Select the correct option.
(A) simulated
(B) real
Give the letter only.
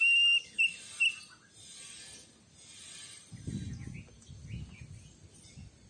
B